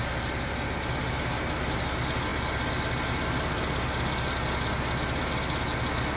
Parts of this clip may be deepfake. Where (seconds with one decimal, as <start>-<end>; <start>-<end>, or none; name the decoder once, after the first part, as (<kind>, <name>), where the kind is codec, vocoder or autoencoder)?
none